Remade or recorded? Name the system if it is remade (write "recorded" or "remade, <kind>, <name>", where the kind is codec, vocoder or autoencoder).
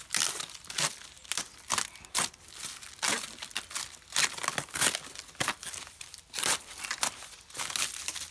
recorded